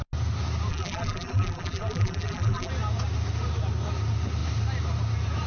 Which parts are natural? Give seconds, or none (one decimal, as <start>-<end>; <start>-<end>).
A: 0.0-0.7; 2.7-5.5